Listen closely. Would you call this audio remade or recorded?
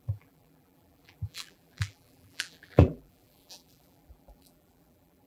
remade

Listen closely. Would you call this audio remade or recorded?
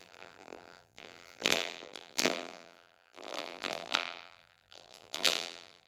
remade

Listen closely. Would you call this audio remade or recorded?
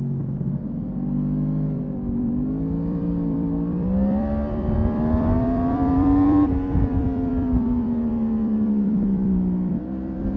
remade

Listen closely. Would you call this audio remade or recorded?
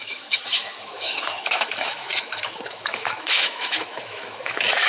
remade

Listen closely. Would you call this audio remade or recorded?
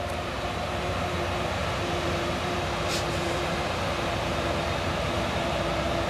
remade